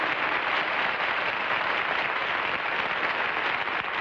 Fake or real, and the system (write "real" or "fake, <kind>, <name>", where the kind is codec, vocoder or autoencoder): real